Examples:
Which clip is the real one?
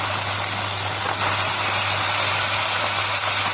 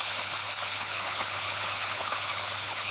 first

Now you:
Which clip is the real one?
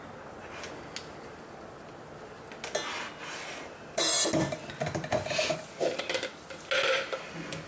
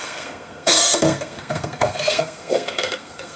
first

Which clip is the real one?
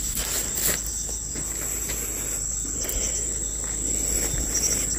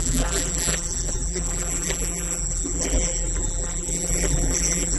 first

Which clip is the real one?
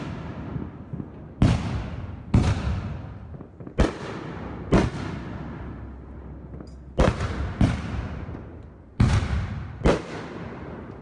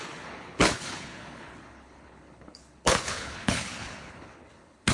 first